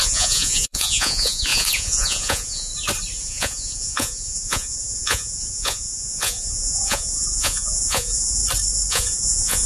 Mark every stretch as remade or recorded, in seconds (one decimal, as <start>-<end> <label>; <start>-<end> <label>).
0.0-2.7 remade; 2.7-3.2 recorded; 3.2-8.4 remade; 8.4-8.9 recorded; 8.9-9.7 remade